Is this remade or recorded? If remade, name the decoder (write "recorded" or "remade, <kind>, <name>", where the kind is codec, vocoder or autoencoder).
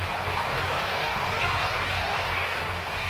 remade, codec, DAC